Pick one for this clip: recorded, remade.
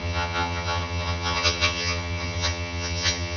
remade